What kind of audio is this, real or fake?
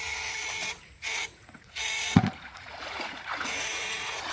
fake